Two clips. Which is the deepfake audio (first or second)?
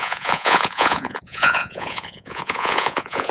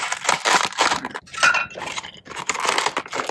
first